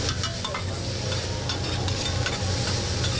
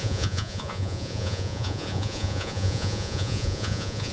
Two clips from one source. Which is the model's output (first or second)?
second